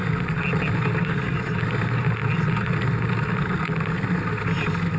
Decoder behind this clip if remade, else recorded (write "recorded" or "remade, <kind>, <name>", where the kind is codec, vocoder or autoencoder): recorded